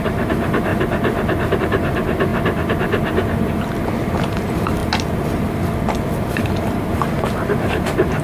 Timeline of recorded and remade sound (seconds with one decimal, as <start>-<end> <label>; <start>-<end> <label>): 0.0-0.7 remade; 0.7-1.6 recorded; 1.6-2.3 remade; 2.3-4.2 recorded; 4.2-4.8 remade; 4.8-6.3 recorded; 6.3-8.2 remade